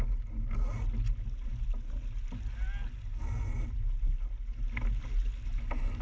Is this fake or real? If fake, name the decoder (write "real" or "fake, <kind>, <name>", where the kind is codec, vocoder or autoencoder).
real